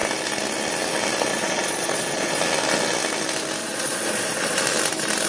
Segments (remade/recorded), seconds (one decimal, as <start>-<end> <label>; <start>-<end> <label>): 0.0-1.3 recorded; 1.3-2.4 remade; 2.4-3.6 recorded; 3.6-4.6 remade; 4.6-5.3 recorded